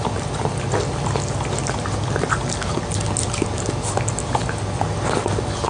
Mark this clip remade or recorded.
recorded